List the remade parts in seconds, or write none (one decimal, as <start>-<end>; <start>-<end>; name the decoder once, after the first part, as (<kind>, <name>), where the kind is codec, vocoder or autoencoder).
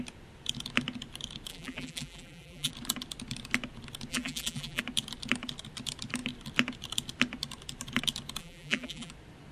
1.5-2.7 (vocoder, BigVGAN v2); 4.1-4.8; 8.4-9.1